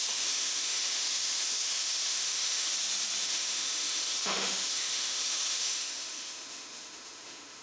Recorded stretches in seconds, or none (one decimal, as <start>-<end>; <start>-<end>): 2.7-3.2